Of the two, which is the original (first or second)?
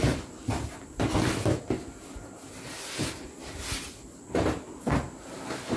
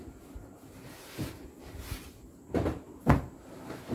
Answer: first